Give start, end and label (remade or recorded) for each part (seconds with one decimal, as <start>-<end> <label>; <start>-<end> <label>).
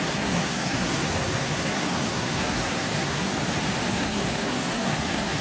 0.0-3.3 remade; 3.3-3.9 recorded; 3.9-5.4 remade